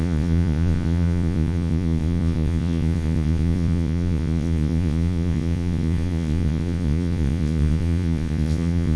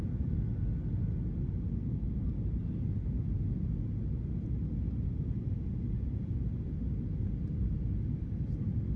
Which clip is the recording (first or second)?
second